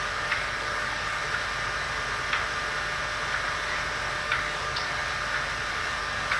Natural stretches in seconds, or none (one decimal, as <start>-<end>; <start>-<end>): 1.2-4.2; 5.0-5.7